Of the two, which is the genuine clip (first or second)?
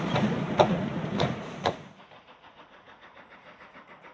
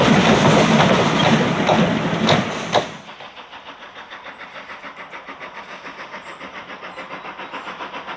second